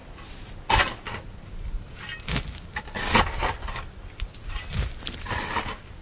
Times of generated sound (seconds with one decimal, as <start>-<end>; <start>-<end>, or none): none